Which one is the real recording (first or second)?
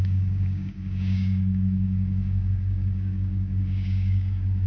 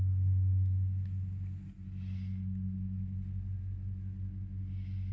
second